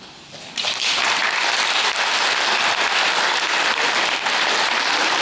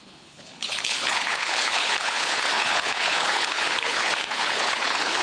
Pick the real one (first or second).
first